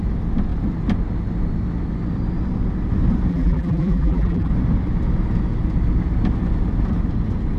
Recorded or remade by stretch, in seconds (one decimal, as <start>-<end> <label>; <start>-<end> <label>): 0.0-3.3 recorded; 3.3-4.5 remade; 4.5-7.6 recorded